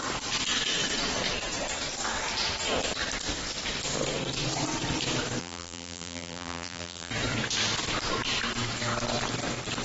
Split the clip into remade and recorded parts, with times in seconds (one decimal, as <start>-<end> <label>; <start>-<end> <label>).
0.0-5.4 recorded; 5.4-7.1 remade; 7.1-9.8 recorded